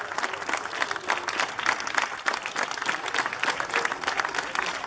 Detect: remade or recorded recorded